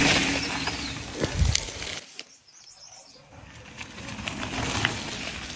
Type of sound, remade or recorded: recorded